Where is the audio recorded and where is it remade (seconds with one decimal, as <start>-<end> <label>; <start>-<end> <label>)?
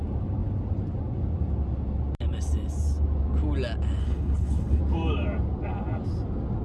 0.0-4.0 recorded; 4.0-4.8 remade; 4.8-6.6 recorded